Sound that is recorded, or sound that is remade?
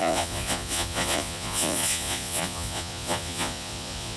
remade